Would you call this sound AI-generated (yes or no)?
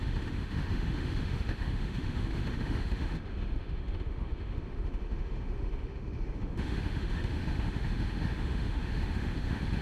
yes